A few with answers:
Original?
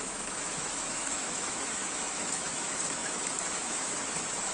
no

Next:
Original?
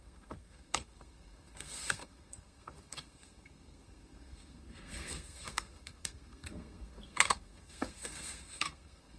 no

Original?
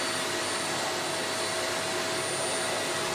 yes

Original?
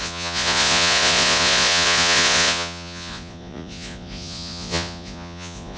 no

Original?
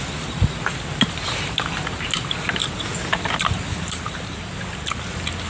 yes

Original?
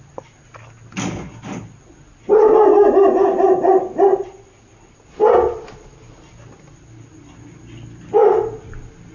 yes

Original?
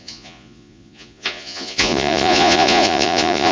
no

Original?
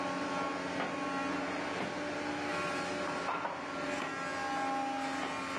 yes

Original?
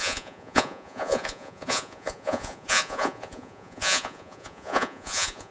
no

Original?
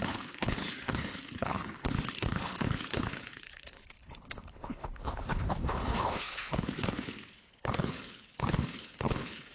no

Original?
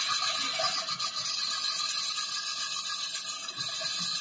yes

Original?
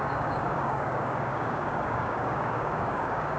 no